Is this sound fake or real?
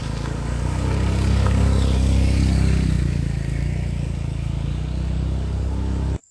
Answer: fake